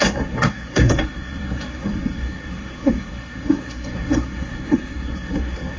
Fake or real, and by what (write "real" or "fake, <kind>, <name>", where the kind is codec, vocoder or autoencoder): fake, codec, SNAC